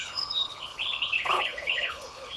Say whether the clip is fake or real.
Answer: fake